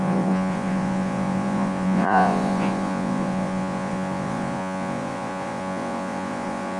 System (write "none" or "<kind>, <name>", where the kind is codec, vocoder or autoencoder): vocoder, Vocos